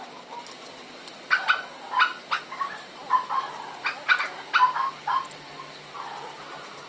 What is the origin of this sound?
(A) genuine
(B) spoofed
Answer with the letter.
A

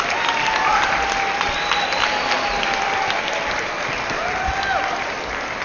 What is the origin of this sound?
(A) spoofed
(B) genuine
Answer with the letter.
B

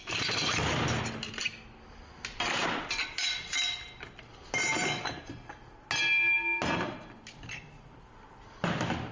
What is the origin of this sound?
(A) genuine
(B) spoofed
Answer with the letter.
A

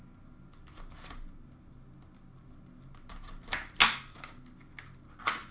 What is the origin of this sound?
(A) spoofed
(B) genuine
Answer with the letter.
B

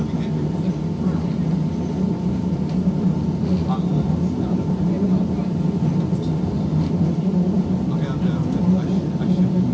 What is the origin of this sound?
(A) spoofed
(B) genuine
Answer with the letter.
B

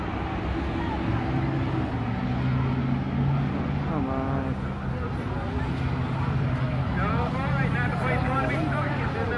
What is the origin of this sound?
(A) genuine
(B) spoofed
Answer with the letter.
A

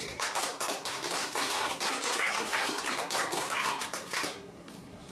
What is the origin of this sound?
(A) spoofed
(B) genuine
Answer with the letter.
A